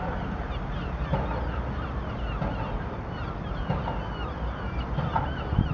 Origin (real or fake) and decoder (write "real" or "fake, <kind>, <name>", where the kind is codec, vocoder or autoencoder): real